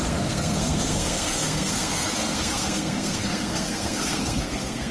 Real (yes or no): no